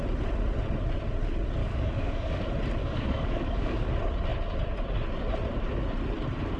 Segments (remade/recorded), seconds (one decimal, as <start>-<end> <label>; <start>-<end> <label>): 0.0-1.6 recorded; 1.6-2.4 remade; 2.4-2.8 recorded; 2.8-3.9 remade; 3.9-6.6 recorded